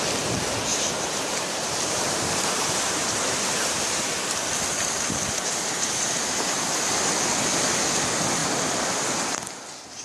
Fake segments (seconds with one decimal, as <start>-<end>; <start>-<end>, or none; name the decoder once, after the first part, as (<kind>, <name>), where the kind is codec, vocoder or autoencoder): 0.7-4.2 (vocoder, BigVGAN v2); 8.4-9.2